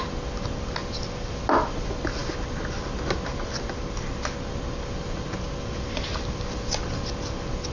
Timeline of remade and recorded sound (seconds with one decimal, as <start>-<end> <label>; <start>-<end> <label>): 0.0-7.7 recorded